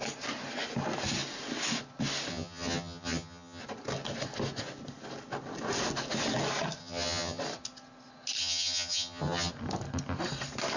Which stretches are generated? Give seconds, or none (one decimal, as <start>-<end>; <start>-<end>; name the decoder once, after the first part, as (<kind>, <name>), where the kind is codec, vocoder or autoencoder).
2.3-3.6 (vocoder, HiFi-GAN); 6.8-7.4; 8.4-9.5